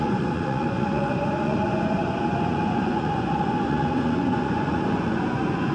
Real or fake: fake